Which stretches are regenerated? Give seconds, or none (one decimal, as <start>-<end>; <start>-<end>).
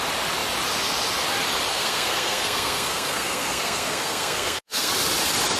1.7-4.9